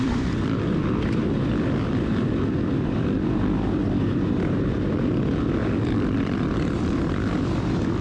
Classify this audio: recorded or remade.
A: remade